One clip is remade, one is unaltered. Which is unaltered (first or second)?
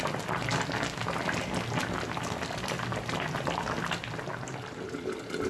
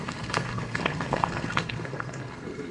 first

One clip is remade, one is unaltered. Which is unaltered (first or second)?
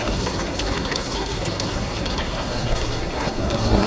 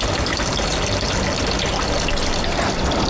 second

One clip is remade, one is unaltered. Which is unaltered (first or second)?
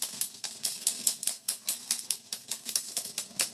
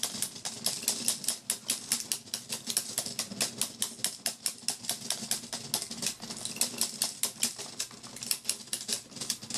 second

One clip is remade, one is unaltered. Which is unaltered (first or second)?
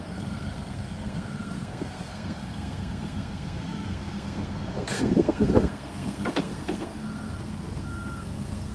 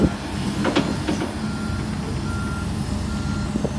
second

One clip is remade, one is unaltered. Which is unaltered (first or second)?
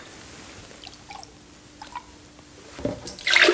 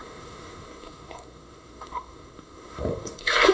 first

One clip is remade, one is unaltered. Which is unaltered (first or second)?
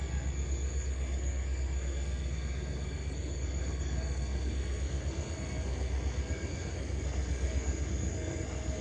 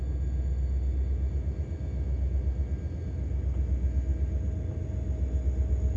second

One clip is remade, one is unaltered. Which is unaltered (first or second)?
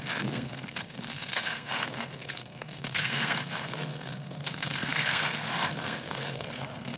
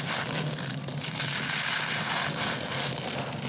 second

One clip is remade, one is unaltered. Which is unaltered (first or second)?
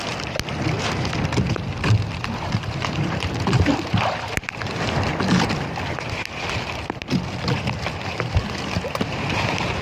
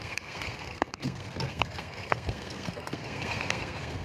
first